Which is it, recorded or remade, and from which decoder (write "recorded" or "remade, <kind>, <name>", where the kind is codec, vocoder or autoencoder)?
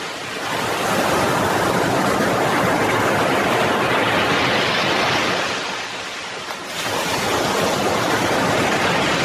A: recorded